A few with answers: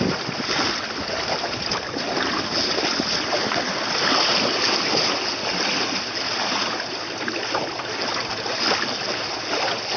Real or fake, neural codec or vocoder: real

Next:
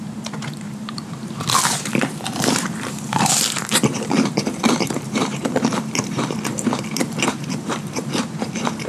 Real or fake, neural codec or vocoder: fake, vocoder, BigVGAN v2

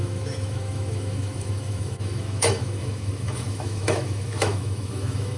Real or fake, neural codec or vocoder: fake, autoencoder, DAC-VAE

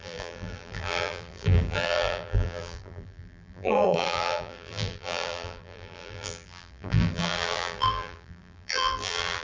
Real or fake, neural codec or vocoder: fake, vocoder, BigVGAN v2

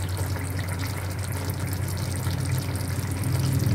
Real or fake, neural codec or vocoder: real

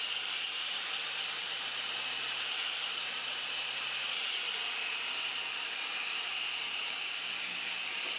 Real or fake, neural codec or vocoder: fake, vocoder, BigVGAN v2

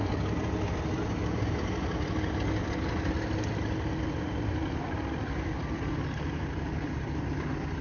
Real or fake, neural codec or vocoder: real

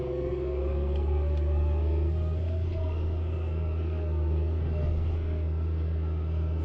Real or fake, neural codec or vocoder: fake, codec, SNAC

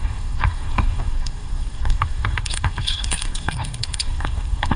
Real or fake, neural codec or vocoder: fake, codec, SNAC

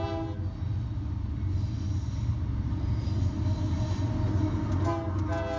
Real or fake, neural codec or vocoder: real